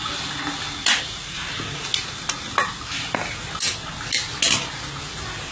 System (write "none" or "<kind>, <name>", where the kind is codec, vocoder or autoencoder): none